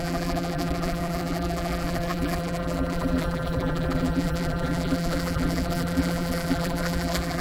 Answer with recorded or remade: remade